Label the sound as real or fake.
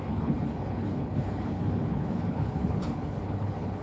fake